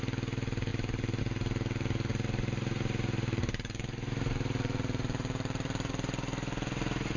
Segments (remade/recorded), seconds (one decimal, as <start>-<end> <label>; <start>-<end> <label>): 0.0-0.7 recorded; 0.7-1.2 remade; 1.2-2.1 recorded; 2.1-5.9 remade; 5.9-7.2 recorded